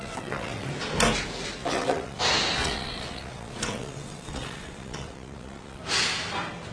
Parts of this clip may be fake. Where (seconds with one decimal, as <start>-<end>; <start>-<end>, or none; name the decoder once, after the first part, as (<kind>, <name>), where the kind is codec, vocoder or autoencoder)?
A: 0.0-0.7 (vocoder, WaveNeXt); 1.6-2.2; 2.6-5.8